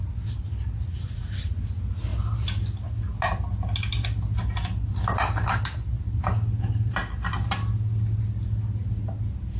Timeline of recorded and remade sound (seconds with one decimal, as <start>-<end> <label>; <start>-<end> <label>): 0.0-0.9 recorded; 0.9-1.6 remade; 1.6-9.6 recorded